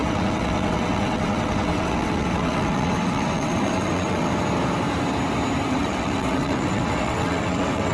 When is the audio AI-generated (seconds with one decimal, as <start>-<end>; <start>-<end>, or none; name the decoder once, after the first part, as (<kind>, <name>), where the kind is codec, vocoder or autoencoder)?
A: 0.0-4.3 (vocoder, WaveNeXt); 5.7-7.9